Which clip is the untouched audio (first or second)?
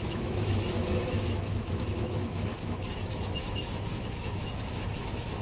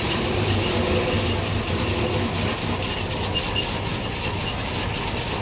second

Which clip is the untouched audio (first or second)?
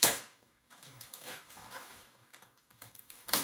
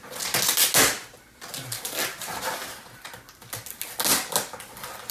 second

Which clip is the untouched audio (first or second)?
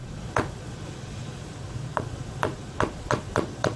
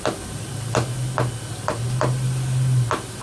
second